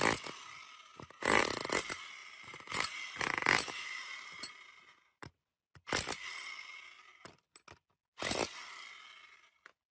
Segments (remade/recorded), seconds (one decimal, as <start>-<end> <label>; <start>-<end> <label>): 0.0-0.9 recorded; 0.9-1.4 remade; 1.4-2.2 recorded; 2.2-5.4 remade; 5.4-9.9 recorded